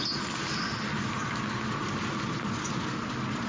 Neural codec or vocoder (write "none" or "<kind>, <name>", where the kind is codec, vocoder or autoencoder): none